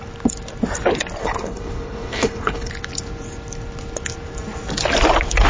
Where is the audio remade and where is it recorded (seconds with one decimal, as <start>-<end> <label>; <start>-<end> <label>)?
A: 0.0-1.2 recorded; 1.2-2.7 remade; 2.7-5.5 recorded